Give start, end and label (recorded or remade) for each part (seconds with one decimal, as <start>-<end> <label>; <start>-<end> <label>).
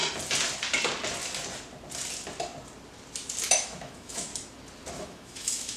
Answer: 0.0-3.5 recorded; 3.5-4.3 remade; 4.3-4.9 recorded; 4.9-5.8 remade